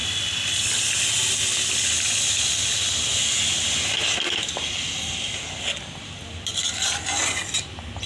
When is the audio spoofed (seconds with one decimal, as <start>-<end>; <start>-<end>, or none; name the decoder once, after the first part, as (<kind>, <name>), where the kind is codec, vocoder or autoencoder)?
none